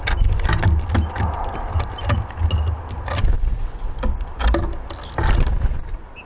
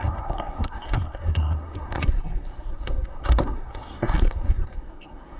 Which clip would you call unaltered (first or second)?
first